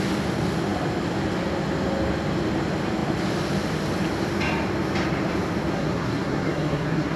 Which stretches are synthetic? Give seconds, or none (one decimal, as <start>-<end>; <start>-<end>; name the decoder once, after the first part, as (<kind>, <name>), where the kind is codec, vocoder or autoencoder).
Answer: 5.7-7.2 (codec, SNAC)